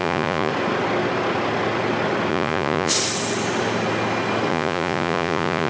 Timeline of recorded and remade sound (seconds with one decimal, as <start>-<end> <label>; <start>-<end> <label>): 0.0-0.5 remade; 0.5-2.3 recorded; 2.3-2.9 remade; 2.9-4.5 recorded; 4.5-5.7 remade